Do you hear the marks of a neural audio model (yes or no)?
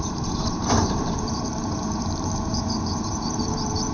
yes